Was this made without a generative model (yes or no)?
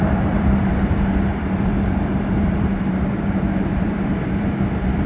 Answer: no